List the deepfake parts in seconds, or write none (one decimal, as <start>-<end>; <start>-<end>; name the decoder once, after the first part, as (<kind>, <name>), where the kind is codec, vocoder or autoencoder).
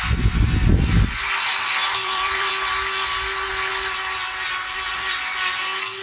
1.5-2.5 (vocoder, BigVGAN v2)